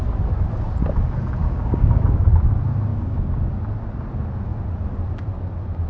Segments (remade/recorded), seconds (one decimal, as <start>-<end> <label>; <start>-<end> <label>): 0.0-1.4 recorded; 1.4-2.2 remade; 2.2-2.9 recorded; 2.9-3.5 remade; 3.5-5.9 recorded